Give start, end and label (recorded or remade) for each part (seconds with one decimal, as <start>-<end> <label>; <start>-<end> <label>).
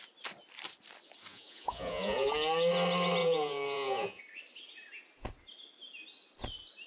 0.0-1.3 recorded; 1.3-2.3 remade; 2.3-3.2 recorded; 3.2-4.2 remade; 4.2-6.9 recorded